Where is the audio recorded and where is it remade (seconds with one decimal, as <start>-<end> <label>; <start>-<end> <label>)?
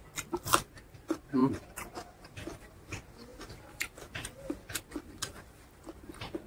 0.0-6.5 recorded